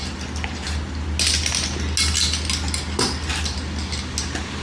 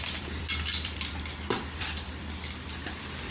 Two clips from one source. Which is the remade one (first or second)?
second